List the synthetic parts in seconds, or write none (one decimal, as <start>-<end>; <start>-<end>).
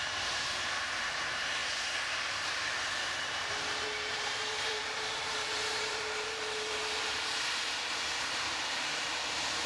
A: 0.0-1.6; 2.3-9.7